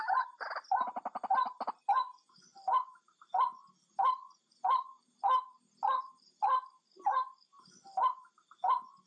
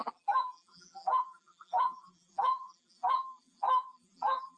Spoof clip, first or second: second